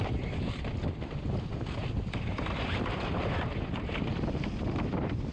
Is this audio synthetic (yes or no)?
yes